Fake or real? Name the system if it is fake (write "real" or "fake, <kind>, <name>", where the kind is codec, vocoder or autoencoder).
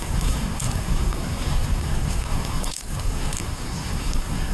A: fake, codec, SNAC